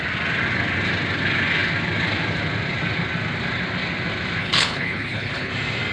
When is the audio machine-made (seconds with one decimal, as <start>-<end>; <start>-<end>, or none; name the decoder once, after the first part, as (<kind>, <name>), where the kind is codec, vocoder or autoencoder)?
4.4-5.5 (codec, HILCodec)